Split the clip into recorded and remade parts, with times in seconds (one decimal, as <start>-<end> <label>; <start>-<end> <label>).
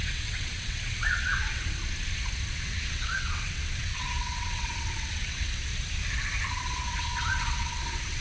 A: 0.0-1.8 remade; 1.8-2.5 recorded; 2.5-5.7 remade; 5.7-6.6 recorded; 6.6-8.2 remade